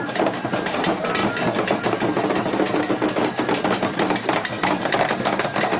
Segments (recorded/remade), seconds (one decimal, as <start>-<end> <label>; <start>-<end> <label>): 0.0-1.2 remade; 1.2-2.8 recorded; 2.8-5.8 remade